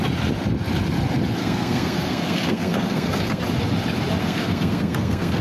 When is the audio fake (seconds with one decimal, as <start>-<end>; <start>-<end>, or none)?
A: 1.4-3.4; 4.2-5.4